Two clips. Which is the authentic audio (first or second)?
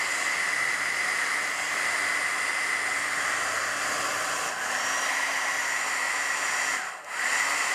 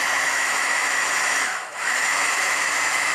first